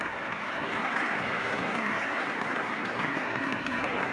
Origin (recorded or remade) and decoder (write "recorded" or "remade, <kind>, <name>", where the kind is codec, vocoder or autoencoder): remade, codec, SNAC